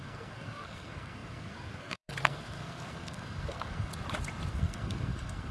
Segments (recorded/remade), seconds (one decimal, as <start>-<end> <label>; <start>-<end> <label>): 0.0-3.9 remade; 3.9-4.5 recorded; 4.5-5.5 remade